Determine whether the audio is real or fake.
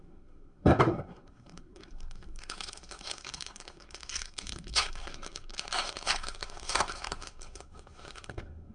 fake